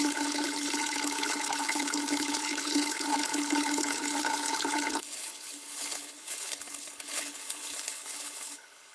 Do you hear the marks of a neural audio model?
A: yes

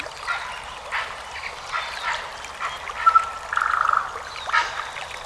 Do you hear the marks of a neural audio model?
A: no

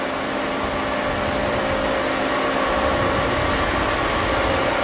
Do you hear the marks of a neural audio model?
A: no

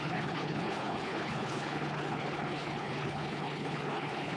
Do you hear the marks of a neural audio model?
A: yes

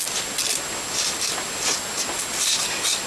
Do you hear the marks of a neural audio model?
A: no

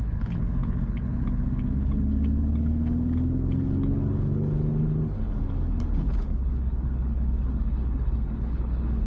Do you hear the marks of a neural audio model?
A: yes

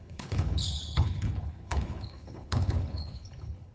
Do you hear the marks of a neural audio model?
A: yes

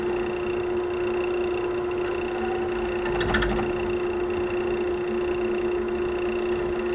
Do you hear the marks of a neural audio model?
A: no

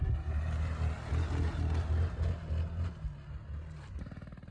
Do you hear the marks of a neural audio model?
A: no